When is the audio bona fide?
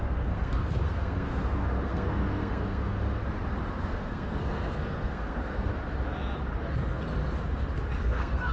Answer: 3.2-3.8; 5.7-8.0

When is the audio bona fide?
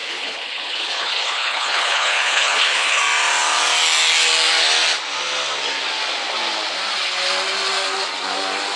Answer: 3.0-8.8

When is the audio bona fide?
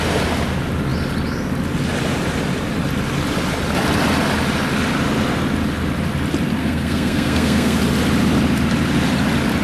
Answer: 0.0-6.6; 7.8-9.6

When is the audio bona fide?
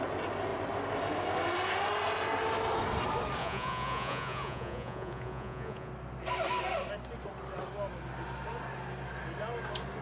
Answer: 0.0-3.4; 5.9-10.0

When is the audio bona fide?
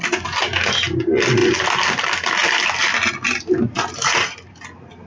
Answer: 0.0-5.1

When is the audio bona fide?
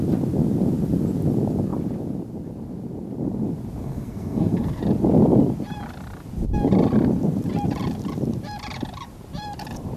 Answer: 0.0-3.8; 4.8-10.0